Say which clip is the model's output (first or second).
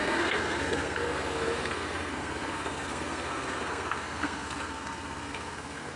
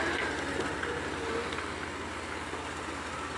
first